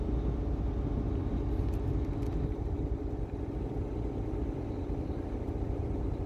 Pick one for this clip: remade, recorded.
recorded